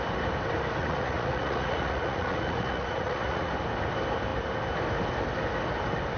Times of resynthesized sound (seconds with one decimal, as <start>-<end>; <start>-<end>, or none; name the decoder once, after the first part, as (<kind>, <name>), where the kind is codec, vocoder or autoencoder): 0.8-3.5 (vocoder, Vocos)